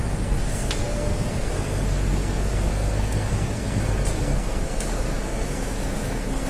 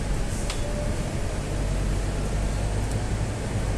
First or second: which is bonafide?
second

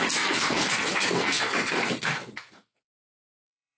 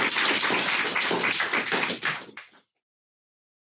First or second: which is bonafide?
second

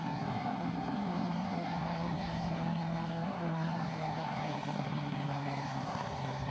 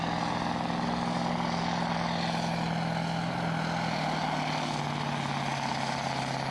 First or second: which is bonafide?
second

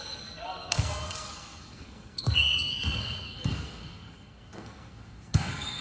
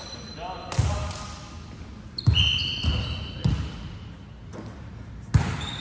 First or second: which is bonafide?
second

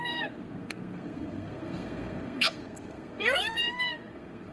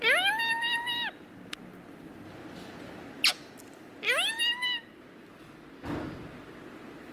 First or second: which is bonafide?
second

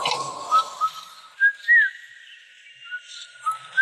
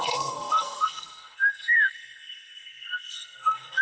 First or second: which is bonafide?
first